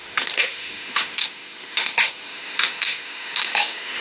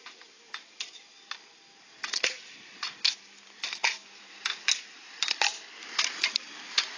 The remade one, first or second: first